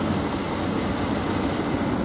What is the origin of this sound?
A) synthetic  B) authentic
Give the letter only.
B